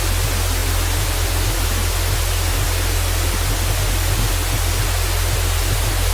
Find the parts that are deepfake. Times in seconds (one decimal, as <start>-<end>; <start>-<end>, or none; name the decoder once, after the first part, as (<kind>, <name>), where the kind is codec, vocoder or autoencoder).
none